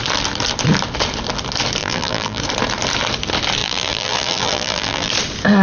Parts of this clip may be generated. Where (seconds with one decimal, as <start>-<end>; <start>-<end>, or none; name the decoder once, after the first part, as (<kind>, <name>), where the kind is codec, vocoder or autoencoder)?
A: 1.8-2.4 (vocoder, BigVGAN v2); 3.6-5.1